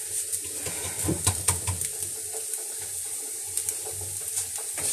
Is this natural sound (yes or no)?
yes